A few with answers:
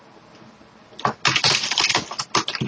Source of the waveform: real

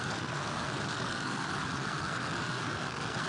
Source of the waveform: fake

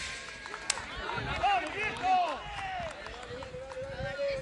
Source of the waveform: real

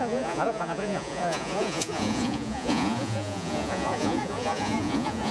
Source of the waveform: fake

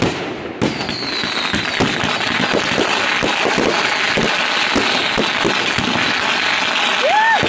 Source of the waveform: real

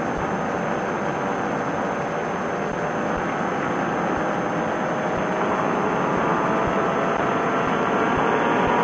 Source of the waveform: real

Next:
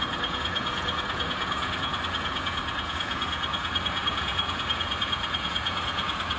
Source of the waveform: fake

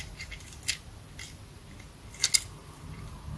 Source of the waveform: real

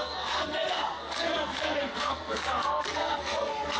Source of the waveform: fake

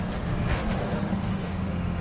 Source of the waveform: fake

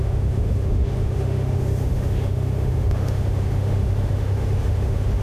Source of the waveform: fake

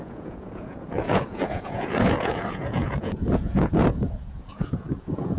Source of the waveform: fake